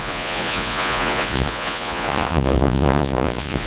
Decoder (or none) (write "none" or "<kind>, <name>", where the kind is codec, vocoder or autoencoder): vocoder, Vocos